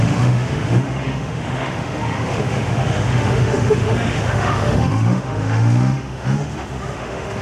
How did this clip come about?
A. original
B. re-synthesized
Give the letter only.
B